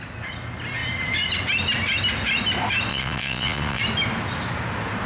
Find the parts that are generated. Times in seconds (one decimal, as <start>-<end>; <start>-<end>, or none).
2.9-3.8